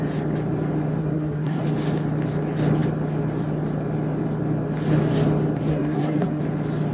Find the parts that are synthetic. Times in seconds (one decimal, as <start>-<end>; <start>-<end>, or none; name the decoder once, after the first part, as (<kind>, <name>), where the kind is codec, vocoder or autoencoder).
1.0-1.6 (codec, SNAC); 5.7-6.4

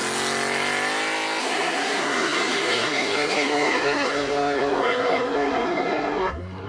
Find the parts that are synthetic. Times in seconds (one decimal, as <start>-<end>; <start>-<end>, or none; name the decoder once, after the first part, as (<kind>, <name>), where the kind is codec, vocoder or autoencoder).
1.4-6.7 (codec, SNAC)

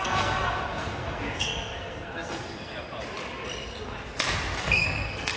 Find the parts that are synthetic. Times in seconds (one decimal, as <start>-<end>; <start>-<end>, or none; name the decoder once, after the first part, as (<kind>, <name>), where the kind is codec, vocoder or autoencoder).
0.0-2.7 (codec, SNAC); 4.6-5.4

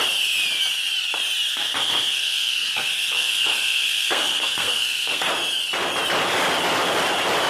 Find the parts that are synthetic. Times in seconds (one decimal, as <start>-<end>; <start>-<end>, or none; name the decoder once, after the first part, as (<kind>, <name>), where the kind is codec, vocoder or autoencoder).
1.5-5.3 (codec, SNAC)

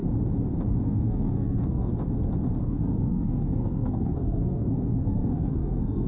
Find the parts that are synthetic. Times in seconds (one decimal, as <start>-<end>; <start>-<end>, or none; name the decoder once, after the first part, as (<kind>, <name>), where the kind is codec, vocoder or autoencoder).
0.7-1.9 (codec, SNAC); 2.6-6.1

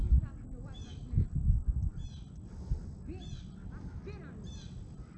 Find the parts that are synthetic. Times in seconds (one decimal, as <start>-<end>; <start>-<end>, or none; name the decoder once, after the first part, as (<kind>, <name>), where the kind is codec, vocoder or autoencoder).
none